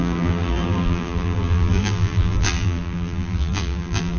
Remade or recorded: remade